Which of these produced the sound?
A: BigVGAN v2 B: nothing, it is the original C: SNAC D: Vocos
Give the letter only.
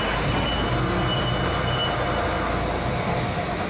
B